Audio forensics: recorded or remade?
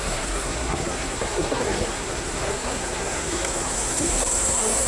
remade